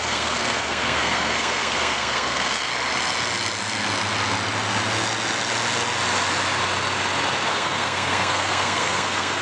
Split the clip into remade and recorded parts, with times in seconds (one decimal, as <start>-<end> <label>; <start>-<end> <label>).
0.0-2.7 remade; 2.7-7.5 recorded; 7.5-9.4 remade